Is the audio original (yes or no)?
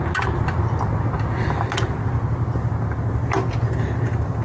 yes